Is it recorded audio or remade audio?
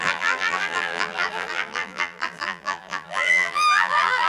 remade